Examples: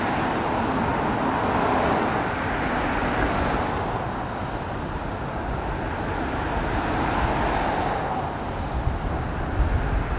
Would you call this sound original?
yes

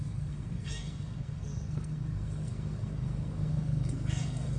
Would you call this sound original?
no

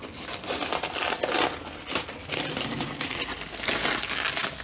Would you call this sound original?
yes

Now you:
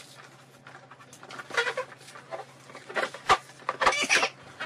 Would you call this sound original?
yes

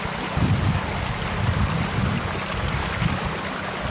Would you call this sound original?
yes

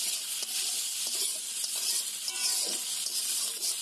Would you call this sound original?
yes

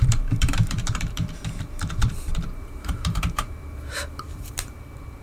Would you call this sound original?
no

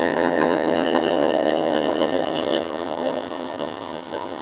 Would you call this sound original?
no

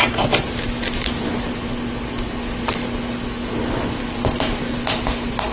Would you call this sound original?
yes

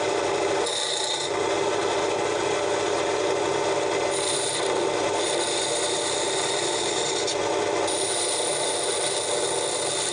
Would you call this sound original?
yes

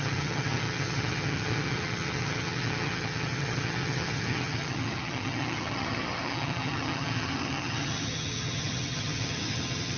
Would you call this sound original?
no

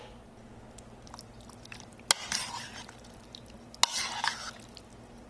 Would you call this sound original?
yes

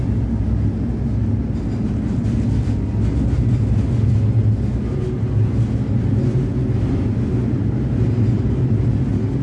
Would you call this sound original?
yes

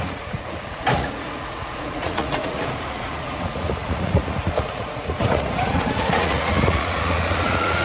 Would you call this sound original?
no